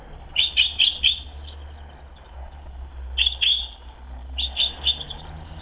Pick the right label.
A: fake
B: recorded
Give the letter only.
B